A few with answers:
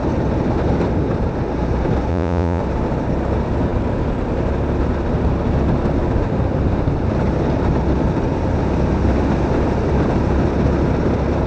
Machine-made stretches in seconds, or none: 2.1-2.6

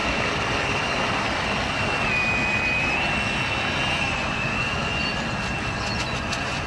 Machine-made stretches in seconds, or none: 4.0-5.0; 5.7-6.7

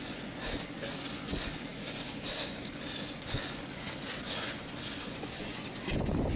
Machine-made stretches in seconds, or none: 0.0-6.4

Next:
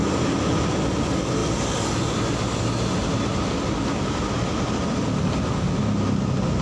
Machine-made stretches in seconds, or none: none